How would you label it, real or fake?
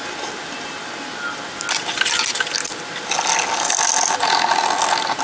real